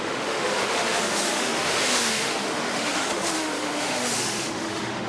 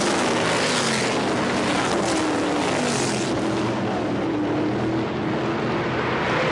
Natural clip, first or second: second